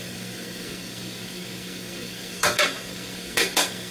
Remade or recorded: remade